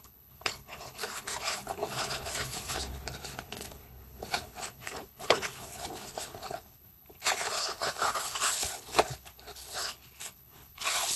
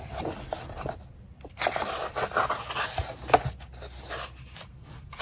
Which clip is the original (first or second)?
second